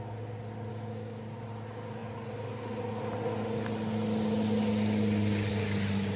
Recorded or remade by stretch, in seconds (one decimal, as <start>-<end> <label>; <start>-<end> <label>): 0.0-0.7 recorded; 0.7-1.2 remade; 1.2-6.2 recorded

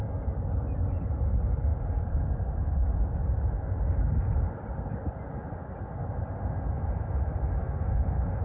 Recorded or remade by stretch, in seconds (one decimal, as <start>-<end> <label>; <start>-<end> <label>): 0.0-7.6 recorded; 7.6-8.4 remade

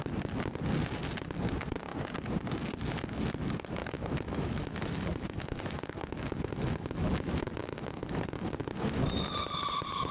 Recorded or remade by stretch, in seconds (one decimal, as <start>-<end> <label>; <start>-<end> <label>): 0.0-3.8 recorded; 3.8-8.5 remade; 8.5-10.1 recorded

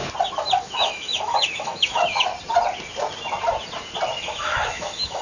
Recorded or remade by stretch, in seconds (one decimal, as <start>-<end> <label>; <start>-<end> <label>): 0.0-0.6 recorded; 0.6-2.3 remade; 2.3-4.2 recorded; 4.2-5.2 remade

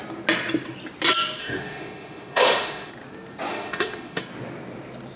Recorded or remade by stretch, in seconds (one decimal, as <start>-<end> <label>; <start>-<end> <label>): 0.0-1.4 recorded; 1.4-2.9 remade; 2.9-3.5 recorded; 3.5-4.2 remade; 4.2-5.2 recorded